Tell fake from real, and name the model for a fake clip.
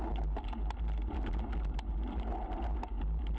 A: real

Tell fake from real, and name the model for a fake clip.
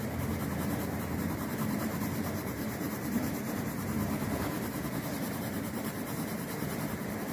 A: fake, vocoder, BigVGAN v2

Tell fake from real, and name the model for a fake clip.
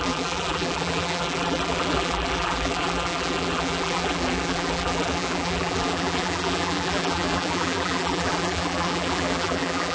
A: fake, vocoder, BigVGAN v2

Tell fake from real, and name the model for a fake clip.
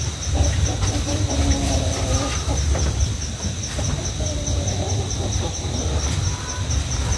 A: real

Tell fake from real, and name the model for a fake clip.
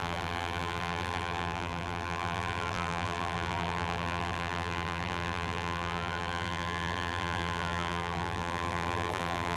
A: fake, vocoder, BigVGAN v2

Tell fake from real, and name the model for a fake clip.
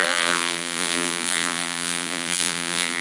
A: fake, vocoder, BigVGAN v2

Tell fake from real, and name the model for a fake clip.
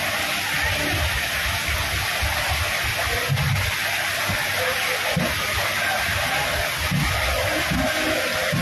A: real